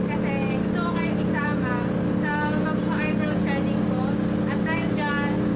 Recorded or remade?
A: recorded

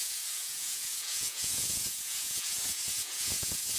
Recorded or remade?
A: remade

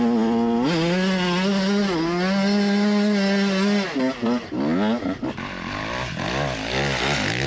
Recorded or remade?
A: recorded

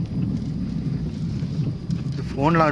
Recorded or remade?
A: recorded